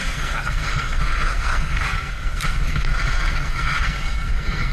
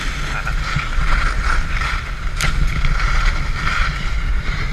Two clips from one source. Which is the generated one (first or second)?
first